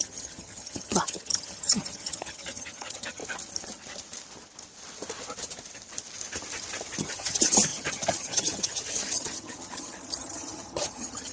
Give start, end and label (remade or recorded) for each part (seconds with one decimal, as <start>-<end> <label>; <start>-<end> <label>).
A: 0.0-3.2 remade; 3.2-7.0 recorded; 7.0-11.3 remade